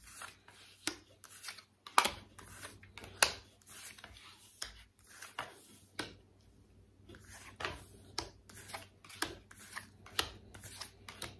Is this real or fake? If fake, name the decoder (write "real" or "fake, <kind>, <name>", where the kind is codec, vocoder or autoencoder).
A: real